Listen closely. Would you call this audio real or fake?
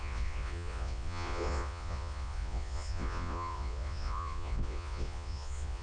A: fake